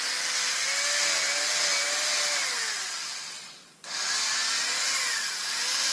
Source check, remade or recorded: recorded